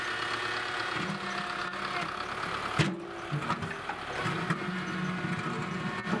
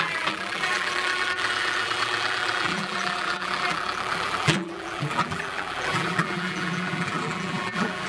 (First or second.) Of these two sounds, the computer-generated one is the second